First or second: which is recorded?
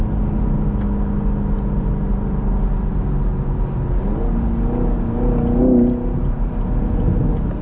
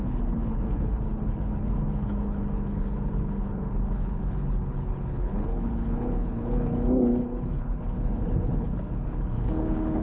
first